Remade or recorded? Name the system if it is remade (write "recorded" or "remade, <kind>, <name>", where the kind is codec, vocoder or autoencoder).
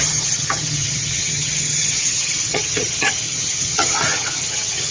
remade, vocoder, HiFi-GAN